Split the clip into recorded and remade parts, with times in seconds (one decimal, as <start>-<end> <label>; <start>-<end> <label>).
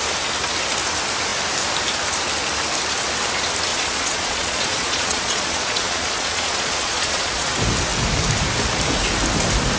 0.0-3.7 recorded; 3.7-7.5 remade; 7.5-9.8 recorded